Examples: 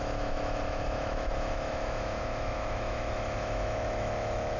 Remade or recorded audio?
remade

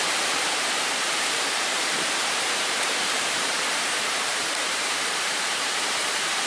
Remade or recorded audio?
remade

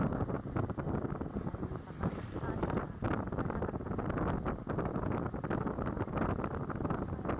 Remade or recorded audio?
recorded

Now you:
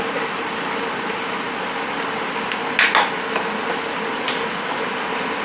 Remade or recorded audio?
recorded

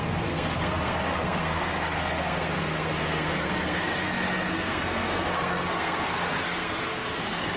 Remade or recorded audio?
remade